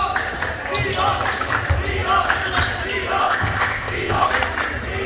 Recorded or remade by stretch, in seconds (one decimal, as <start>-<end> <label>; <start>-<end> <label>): 0.0-3.2 recorded; 3.2-4.3 remade; 4.3-5.1 recorded